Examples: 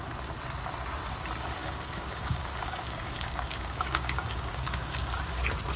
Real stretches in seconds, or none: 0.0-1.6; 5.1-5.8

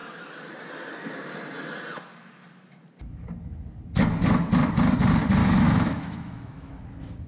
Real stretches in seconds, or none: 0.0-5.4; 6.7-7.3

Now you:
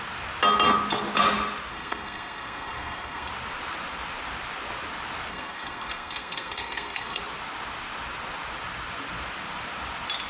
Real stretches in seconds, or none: 0.0-1.7; 3.3-5.3; 7.2-10.3

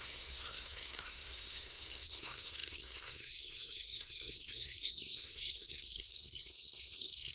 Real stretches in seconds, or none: none

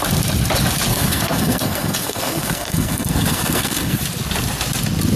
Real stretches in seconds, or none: 0.0-0.9; 4.0-5.2

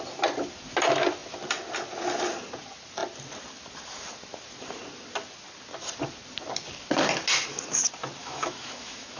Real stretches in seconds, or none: 0.0-8.2

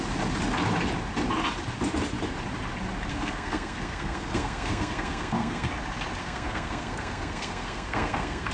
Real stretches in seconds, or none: 0.0-3.1; 5.7-6.2